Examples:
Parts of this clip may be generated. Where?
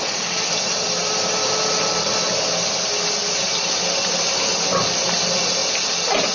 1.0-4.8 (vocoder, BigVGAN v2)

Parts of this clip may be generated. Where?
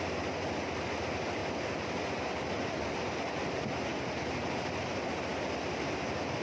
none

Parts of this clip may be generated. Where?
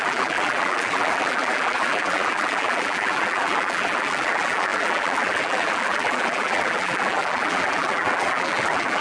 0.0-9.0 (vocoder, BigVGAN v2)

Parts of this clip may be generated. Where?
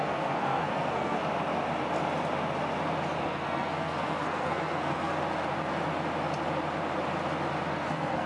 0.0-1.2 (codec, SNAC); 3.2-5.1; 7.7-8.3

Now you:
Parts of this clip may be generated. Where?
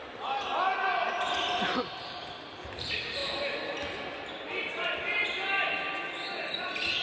none